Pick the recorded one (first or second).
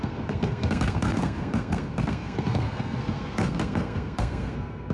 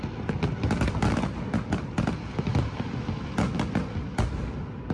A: second